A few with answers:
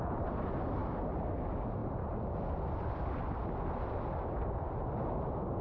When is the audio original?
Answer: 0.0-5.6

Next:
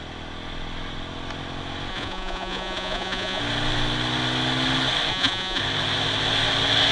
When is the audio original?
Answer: 0.0-1.9; 3.4-5.1; 5.6-6.9